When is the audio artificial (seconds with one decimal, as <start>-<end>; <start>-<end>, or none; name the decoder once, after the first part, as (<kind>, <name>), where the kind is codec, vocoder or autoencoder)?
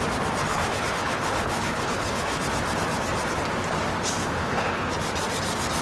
0.5-2.4 (codec, HILCodec); 4.2-4.9